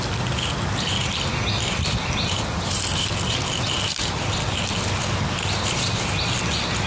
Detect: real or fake real